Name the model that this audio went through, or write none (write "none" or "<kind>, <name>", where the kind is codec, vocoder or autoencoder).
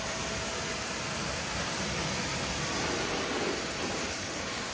none